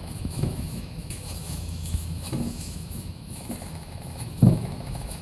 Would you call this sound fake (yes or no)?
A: yes